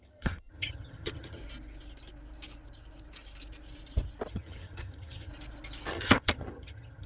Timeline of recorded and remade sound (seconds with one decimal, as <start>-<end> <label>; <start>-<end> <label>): 0.0-1.4 remade; 1.4-4.3 recorded; 4.3-5.3 remade; 5.3-5.9 recorded; 5.9-7.1 remade